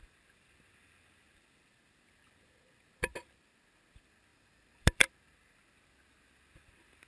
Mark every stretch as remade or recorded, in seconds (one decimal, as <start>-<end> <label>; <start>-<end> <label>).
0.0-4.3 recorded; 4.3-5.1 remade; 5.1-7.1 recorded